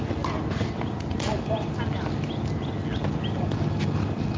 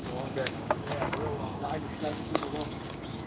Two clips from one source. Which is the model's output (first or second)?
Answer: second